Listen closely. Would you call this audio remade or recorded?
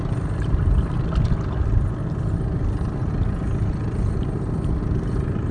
recorded